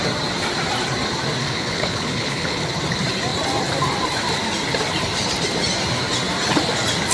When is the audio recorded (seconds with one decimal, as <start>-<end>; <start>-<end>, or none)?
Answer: 0.0-1.4; 2.7-7.1